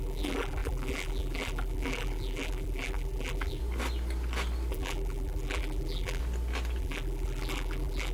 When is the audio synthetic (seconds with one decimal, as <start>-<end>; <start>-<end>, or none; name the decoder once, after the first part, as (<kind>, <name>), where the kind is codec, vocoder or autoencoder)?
0.0-3.6 (vocoder, BigVGAN v2); 4.7-6.2; 6.8-8.1